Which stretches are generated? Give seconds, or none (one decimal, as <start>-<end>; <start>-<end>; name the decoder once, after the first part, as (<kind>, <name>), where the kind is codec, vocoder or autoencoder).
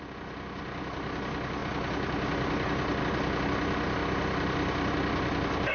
none